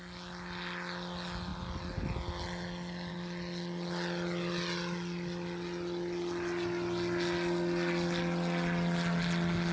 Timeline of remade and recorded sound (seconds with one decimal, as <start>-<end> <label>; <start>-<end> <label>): 0.0-9.7 recorded